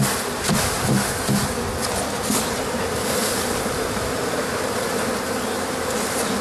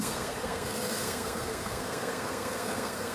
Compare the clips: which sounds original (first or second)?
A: first